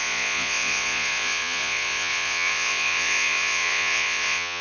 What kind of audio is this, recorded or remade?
remade